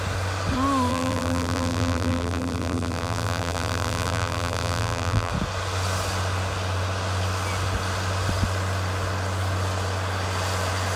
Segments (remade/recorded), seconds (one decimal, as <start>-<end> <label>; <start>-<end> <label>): 0.0-0.9 recorded; 0.9-5.3 remade; 5.3-11.0 recorded